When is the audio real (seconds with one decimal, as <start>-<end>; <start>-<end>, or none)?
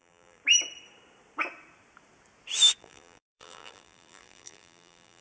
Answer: 0.4-2.8